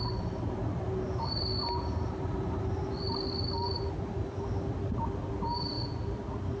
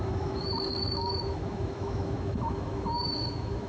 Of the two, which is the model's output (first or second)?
second